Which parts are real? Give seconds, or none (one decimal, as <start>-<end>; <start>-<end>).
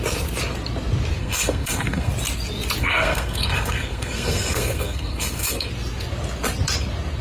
0.0-1.2; 2.1-2.8; 5.7-7.2